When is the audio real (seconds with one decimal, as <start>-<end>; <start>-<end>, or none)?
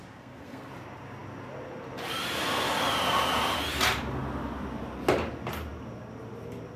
0.7-6.8